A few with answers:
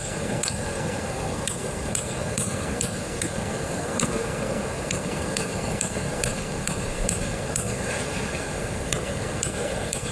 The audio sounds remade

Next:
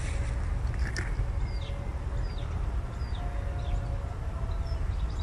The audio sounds recorded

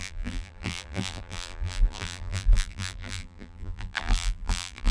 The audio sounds remade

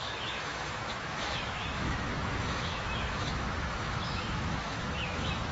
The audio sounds remade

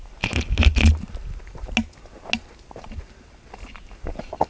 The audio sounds recorded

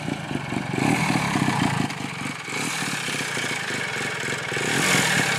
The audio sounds recorded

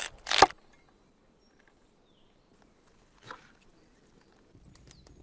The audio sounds recorded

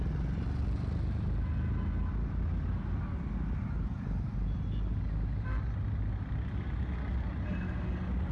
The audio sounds recorded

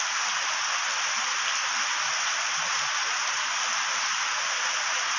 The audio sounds recorded